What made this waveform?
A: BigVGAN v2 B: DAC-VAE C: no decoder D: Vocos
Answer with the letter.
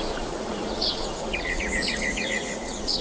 D